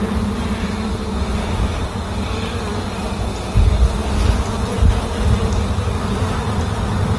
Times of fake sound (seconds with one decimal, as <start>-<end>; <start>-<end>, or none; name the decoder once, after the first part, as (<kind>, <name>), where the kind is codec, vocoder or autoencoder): none